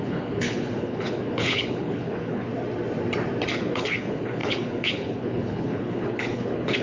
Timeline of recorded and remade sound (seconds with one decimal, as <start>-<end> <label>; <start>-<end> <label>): 0.0-2.5 remade; 2.5-3.5 recorded; 3.5-6.8 remade